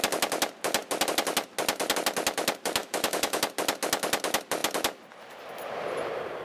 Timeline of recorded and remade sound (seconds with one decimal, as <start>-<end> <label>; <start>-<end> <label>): 0.0-2.8 recorded; 2.8-3.4 remade; 3.4-6.4 recorded